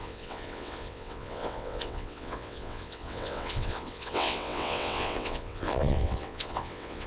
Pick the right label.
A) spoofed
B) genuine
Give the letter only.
A